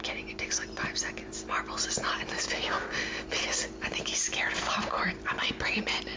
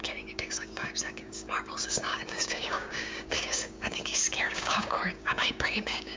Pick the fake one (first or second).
second